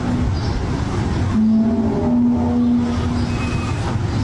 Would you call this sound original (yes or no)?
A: yes